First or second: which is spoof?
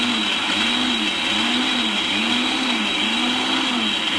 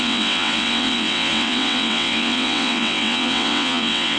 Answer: second